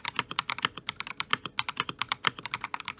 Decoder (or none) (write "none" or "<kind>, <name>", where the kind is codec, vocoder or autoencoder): none